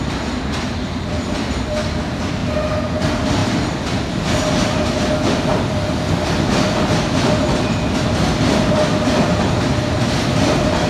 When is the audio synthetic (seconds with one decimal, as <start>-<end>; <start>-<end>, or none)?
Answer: none